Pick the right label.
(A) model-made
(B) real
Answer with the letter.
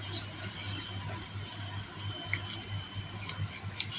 B